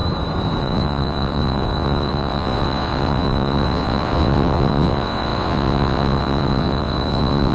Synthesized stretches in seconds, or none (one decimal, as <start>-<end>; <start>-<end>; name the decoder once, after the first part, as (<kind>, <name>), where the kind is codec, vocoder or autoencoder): 0.6-7.5 (vocoder, WaveNeXt)